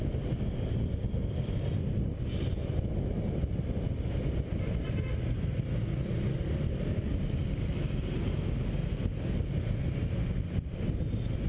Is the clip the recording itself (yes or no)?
yes